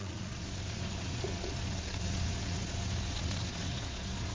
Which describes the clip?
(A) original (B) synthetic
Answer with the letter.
B